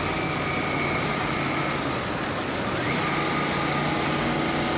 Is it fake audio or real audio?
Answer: real